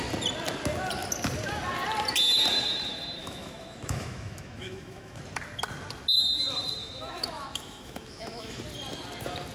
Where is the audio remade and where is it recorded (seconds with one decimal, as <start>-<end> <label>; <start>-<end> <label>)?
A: 0.0-3.2 recorded; 3.2-5.2 remade; 5.2-6.8 recorded; 6.8-8.6 remade; 8.6-9.5 recorded

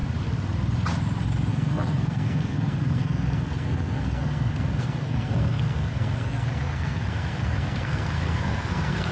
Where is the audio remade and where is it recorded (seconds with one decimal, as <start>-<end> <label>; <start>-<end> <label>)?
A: 0.0-1.5 recorded; 1.5-9.1 remade

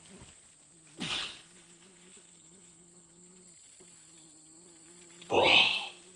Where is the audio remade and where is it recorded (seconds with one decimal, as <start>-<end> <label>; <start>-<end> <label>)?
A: 0.0-1.2 recorded; 1.2-3.4 remade; 3.4-6.2 recorded

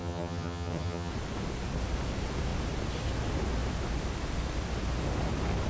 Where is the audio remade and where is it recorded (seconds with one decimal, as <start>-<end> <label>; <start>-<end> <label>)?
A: 0.0-1.1 remade; 1.1-5.7 recorded

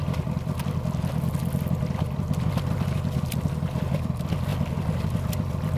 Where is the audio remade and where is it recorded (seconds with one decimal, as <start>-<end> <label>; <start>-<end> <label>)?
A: 0.0-5.8 recorded

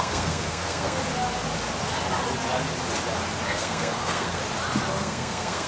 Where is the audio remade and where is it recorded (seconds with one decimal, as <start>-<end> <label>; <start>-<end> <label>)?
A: 0.0-1.0 remade; 1.0-3.5 recorded; 3.5-4.4 remade; 4.4-5.0 recorded; 5.0-5.7 remade

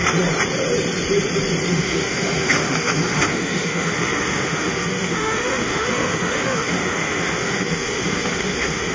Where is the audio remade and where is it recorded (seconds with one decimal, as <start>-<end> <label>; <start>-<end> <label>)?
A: 0.0-1.7 recorded; 1.7-8.9 remade